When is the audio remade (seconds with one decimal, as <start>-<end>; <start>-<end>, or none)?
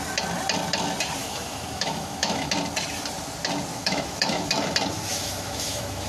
1.2-2.5; 3.7-4.5; 5.1-6.1